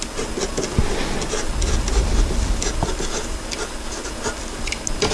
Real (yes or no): yes